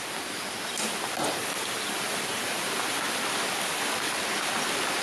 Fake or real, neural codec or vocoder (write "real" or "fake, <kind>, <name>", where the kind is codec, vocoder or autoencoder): real